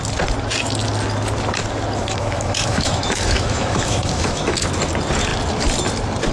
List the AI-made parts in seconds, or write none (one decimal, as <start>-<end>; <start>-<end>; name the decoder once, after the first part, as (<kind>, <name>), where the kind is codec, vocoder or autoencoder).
2.0-4.7 (autoencoder, DAC-VAE)